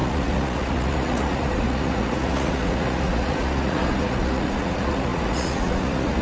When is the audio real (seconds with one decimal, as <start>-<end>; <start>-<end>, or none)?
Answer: none